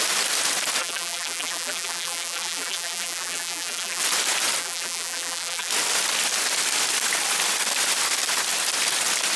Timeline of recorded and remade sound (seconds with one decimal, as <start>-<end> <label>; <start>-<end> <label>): 0.0-0.8 recorded; 0.8-4.0 remade; 4.0-4.6 recorded; 4.6-5.7 remade; 5.7-9.4 recorded